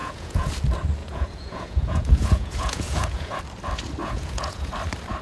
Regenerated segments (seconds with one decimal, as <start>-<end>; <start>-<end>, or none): 0.0-0.5; 1.0-3.4; 4.0-4.7